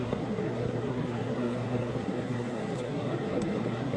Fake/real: fake